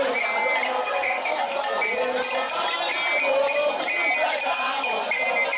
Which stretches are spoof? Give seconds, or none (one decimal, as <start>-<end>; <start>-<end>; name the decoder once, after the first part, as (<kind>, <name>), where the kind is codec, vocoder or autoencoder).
0.8-1.4 (codec, SNAC)